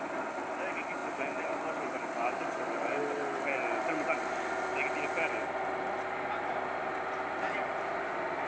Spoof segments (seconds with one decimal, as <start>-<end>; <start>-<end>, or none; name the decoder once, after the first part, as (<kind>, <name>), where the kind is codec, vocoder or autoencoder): none